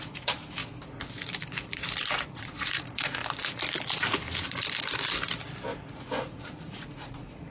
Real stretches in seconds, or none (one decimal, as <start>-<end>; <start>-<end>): 0.6-2.2; 3.2-5.7